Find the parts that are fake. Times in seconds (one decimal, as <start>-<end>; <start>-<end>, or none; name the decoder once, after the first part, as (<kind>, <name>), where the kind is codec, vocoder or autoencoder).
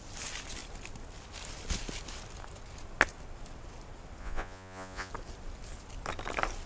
4.2-5.1 (vocoder, Vocos)